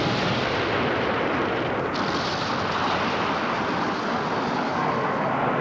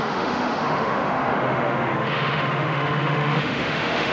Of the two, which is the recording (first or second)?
first